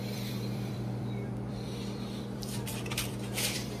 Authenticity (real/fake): fake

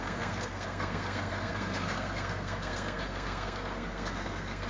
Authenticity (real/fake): fake